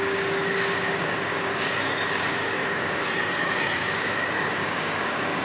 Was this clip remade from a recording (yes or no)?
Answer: yes